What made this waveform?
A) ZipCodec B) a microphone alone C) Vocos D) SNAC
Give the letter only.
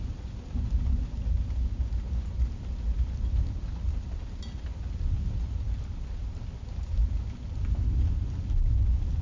B